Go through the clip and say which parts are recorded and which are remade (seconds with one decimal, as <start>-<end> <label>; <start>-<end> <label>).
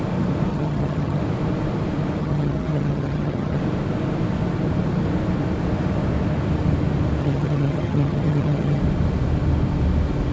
0.0-0.5 recorded; 0.5-1.2 remade; 1.2-2.2 recorded; 2.2-3.6 remade; 3.6-7.2 recorded; 7.2-8.8 remade; 8.8-10.3 recorded